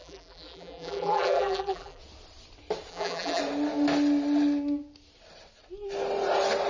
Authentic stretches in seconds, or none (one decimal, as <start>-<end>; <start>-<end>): 2.0-2.9; 3.4-6.7